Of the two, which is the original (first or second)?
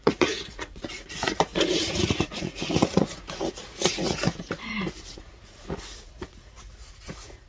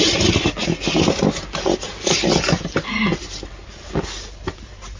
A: second